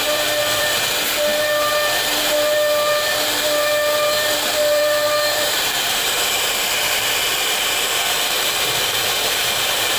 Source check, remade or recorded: remade